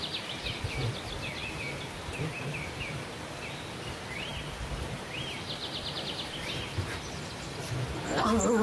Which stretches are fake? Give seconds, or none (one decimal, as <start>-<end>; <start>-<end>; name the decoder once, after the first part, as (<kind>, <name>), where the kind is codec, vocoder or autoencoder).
none